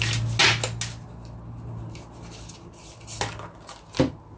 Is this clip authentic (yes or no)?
yes